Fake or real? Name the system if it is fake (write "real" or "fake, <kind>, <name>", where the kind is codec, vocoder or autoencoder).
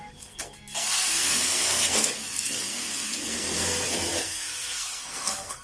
fake, codec, SNAC